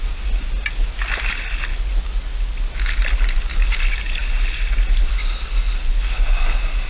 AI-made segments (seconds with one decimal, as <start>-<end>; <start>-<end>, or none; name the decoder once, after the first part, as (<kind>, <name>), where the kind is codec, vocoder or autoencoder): none

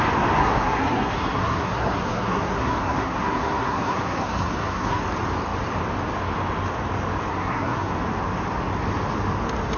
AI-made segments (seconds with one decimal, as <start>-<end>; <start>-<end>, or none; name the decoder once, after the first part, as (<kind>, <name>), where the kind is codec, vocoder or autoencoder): 0.4-5.0 (codec, SNAC); 7.3-7.9

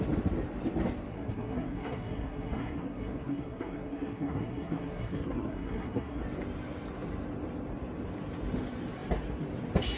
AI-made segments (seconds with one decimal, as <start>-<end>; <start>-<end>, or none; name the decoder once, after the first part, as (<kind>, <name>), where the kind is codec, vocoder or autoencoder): 1.1-6.2 (codec, SNAC)